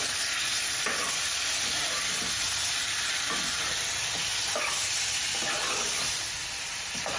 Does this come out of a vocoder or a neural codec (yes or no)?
no